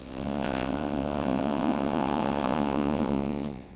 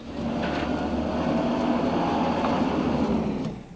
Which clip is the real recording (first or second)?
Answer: second